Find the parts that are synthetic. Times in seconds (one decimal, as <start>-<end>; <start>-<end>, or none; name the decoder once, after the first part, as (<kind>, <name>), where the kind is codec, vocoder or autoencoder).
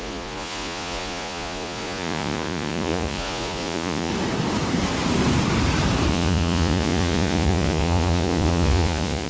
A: 0.0-4.1 (vocoder, Vocos); 6.1-9.3